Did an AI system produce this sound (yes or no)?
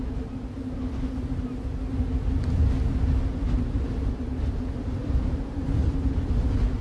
no